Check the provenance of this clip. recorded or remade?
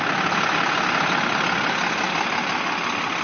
recorded